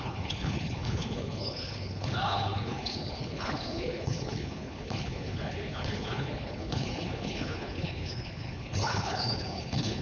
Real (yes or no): no